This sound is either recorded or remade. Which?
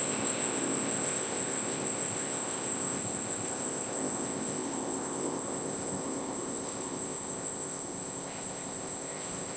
remade